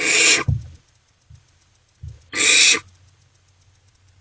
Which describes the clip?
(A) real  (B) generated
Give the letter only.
A